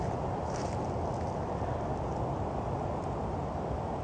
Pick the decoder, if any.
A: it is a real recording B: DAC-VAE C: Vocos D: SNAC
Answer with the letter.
A